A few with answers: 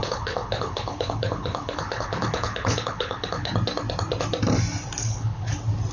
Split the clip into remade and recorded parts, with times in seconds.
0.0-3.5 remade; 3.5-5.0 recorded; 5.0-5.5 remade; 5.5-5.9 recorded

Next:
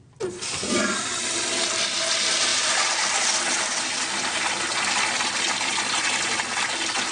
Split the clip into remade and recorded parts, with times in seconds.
0.0-7.1 recorded

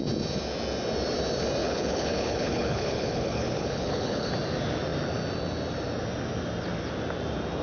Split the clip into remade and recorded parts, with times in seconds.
0.0-1.6 recorded; 1.6-4.3 remade; 4.3-7.6 recorded

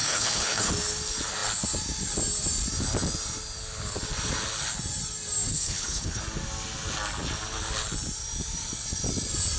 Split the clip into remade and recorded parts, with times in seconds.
0.0-0.7 remade; 0.7-5.5 recorded; 5.5-6.2 remade; 6.2-9.6 recorded

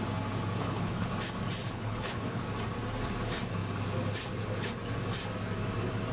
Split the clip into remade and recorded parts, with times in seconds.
0.0-0.6 recorded; 0.6-1.1 remade; 1.1-1.6 recorded; 1.6-2.4 remade; 2.4-6.1 recorded

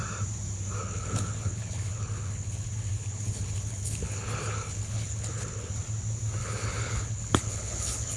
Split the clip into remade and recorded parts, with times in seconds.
0.0-0.8 recorded; 0.8-5.7 remade; 5.7-6.4 recorded; 6.4-8.2 remade

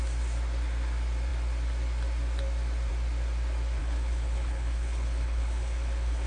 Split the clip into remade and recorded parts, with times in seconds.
0.0-3.8 recorded; 3.8-6.3 remade